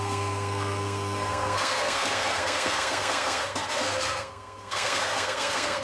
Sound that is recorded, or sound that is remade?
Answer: remade